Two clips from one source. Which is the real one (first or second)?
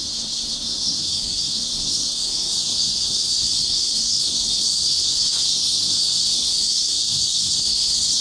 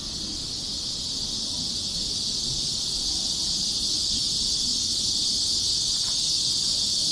second